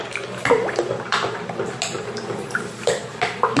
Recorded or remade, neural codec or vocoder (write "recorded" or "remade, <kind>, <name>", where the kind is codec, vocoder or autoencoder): recorded